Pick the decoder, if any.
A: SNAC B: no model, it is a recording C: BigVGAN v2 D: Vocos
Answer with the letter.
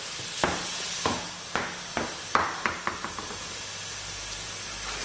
B